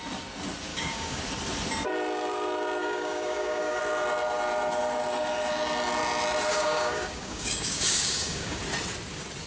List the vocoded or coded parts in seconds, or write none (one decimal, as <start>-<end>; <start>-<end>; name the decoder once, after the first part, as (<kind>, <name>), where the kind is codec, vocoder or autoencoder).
0.7-1.2 (codec, DAC); 2.8-3.8; 6.5-8.6